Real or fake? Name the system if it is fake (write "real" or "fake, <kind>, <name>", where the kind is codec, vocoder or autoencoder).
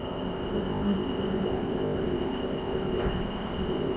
fake, codec, ZipCodec